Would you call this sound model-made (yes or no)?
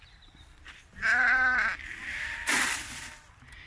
yes